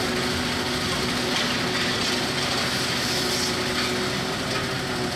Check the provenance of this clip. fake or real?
real